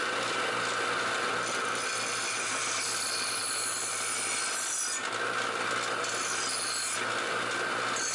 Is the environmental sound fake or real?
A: real